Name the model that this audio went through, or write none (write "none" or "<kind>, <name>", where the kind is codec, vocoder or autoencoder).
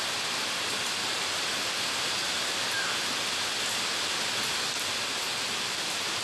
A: none